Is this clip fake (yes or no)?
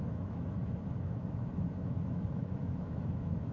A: yes